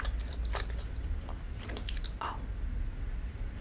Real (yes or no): yes